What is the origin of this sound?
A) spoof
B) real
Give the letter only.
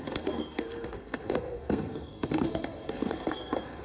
A